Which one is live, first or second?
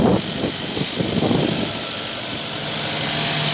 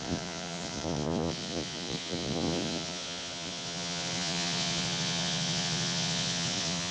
first